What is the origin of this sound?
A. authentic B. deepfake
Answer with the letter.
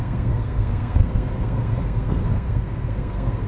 B